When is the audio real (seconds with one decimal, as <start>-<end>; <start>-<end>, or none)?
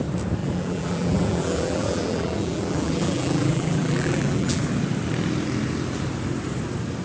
0.0-0.4; 4.6-7.0